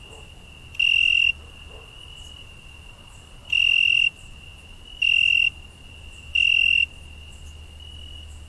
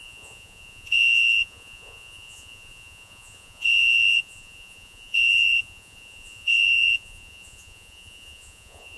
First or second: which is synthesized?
second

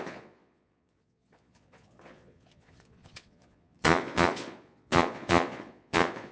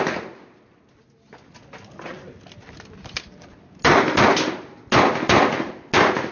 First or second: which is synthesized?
first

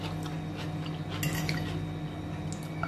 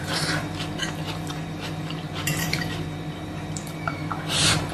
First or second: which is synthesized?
second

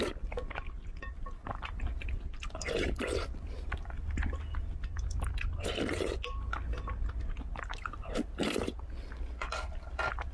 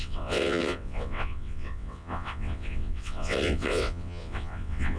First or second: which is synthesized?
second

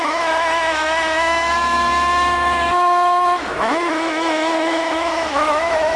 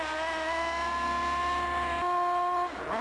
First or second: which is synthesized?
first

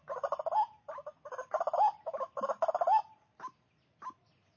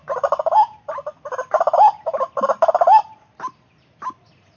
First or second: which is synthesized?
second